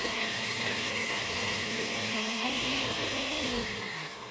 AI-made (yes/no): yes